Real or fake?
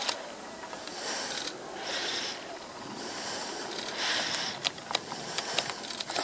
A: real